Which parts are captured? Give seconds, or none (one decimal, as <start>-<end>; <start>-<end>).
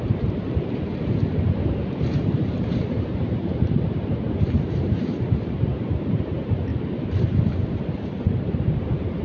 6.7-7.8